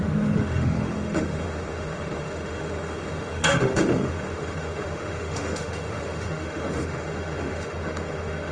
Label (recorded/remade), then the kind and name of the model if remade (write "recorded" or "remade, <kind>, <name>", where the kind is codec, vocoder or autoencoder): remade, autoencoder, DAC-VAE